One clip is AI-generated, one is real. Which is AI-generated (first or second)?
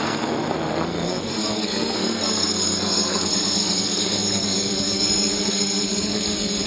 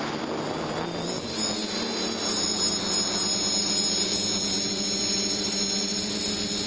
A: first